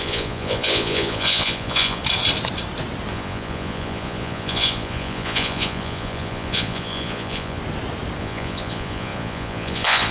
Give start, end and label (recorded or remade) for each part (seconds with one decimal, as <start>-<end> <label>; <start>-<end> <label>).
0.0-2.0 remade; 2.0-3.1 recorded; 3.1-7.6 remade; 7.6-8.2 recorded; 8.2-10.1 remade